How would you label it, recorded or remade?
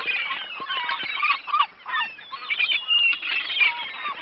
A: recorded